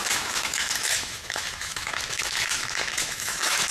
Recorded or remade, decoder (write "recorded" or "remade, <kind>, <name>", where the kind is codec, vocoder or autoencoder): remade, autoencoder, DAC-VAE